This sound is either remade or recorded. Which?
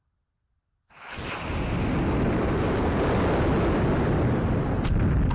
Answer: recorded